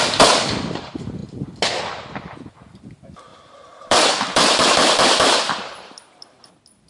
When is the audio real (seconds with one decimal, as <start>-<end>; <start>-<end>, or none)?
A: 0.0-3.3; 6.5-6.9